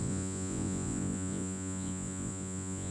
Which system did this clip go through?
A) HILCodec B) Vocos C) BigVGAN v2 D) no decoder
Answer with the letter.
B